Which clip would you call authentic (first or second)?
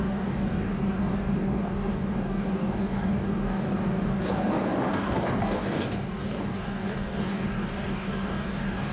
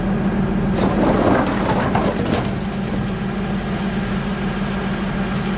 second